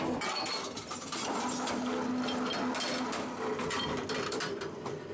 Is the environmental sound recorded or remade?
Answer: recorded